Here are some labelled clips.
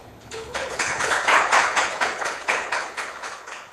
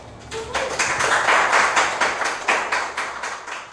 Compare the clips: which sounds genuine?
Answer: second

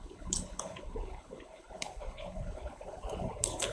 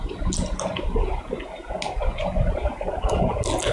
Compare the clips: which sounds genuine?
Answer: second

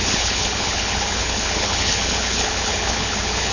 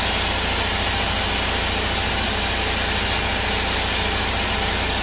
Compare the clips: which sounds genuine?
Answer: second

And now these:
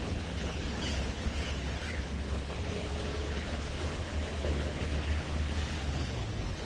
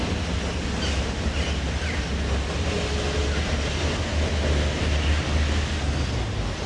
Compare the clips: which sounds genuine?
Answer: second